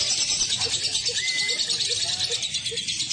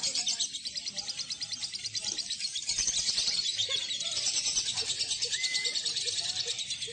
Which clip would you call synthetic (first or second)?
second